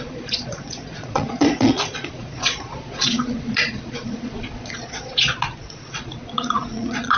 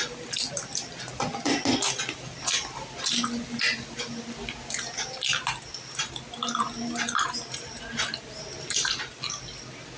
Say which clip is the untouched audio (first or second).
second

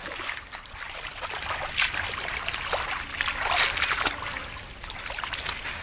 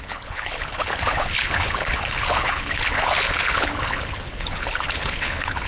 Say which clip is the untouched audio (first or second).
first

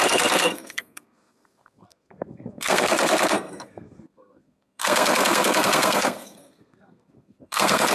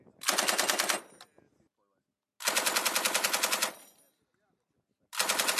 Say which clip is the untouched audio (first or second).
second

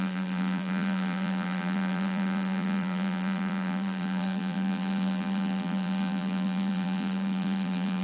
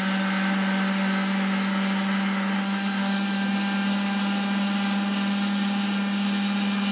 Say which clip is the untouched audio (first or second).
second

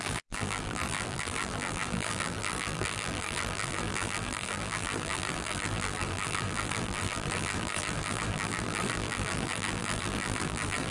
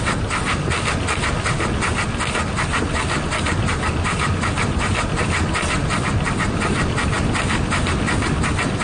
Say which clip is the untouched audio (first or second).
second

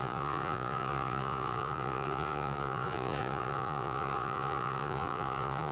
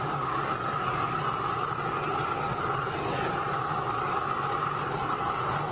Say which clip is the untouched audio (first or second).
second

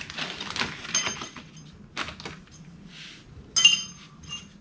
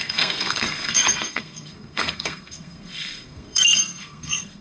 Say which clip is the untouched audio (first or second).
first